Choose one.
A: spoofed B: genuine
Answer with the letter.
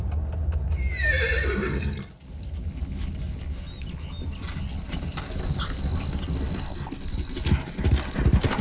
B